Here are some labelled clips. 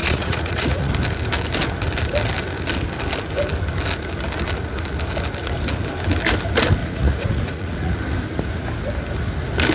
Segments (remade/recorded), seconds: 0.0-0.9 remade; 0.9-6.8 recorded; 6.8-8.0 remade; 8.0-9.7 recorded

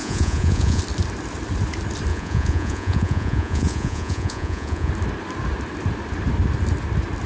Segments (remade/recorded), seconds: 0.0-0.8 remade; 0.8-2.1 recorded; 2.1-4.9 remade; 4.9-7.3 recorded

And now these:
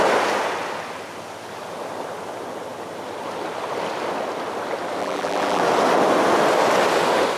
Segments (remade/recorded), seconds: 0.0-5.0 recorded; 5.0-5.6 remade; 5.6-7.4 recorded